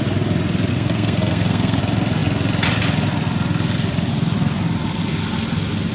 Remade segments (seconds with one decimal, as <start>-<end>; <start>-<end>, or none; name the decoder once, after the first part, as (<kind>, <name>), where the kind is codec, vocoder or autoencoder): 0.7-1.8 (codec, SNAC)